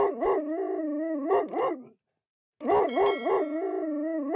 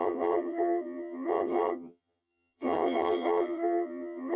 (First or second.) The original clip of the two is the first